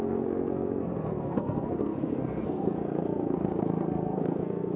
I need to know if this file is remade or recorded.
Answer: remade